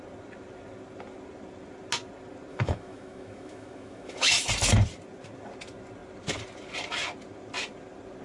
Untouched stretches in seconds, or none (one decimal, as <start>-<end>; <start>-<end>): 0.0-2.5; 4.5-8.2